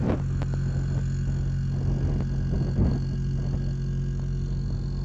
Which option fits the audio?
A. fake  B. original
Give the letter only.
B